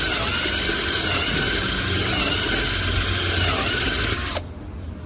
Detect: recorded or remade recorded